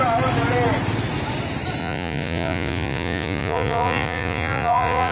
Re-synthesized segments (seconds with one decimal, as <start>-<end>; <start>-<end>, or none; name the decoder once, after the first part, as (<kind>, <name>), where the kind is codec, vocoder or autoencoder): 1.8-5.1 (vocoder, Vocos)